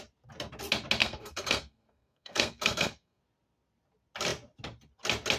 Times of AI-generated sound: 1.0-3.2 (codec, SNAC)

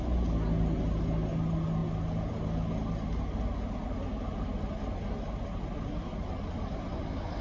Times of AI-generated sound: none

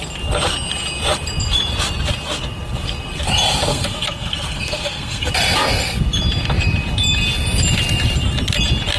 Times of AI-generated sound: 3.7-5.3 (codec, SNAC)

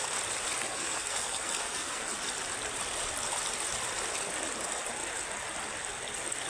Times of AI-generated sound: 0.6-2.1 (codec, SNAC)